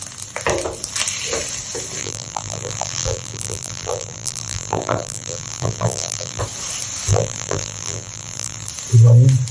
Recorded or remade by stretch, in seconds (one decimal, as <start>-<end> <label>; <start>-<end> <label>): 0.0-2.0 recorded; 2.0-6.4 remade; 6.4-7.1 recorded; 7.1-8.7 remade; 8.7-9.5 recorded